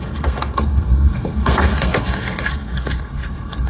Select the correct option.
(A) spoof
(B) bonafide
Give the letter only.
A